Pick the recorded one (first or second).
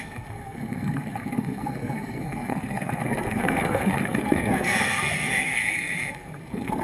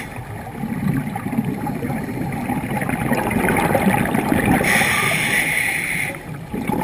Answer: second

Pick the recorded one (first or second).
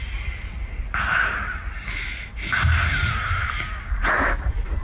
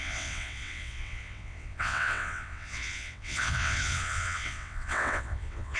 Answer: first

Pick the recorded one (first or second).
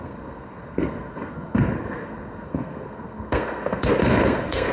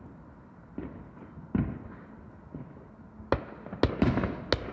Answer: second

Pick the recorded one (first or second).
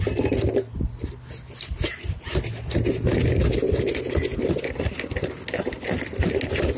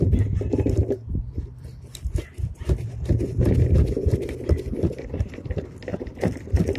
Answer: first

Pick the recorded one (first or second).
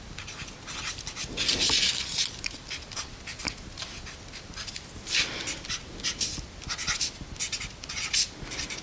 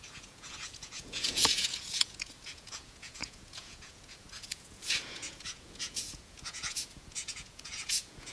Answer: first